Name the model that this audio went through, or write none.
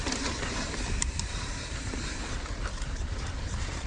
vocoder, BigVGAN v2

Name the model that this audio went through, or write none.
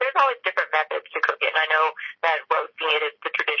none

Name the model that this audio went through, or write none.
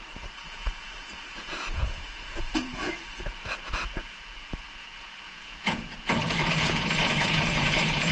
vocoder, Vocos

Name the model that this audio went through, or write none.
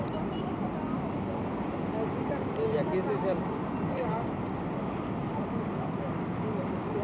none